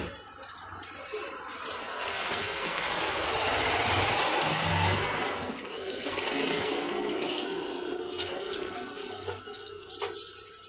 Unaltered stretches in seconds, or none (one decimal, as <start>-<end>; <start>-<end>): 0.0-1.8; 3.3-4.7; 9.9-10.7